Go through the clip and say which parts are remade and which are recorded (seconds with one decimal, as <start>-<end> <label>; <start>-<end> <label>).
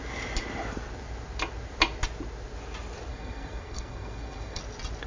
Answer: 0.0-3.1 recorded; 3.1-4.6 remade; 4.6-5.1 recorded